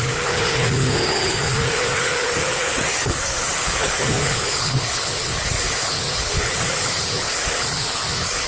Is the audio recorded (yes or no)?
no